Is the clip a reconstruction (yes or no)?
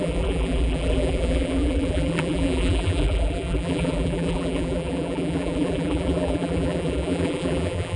yes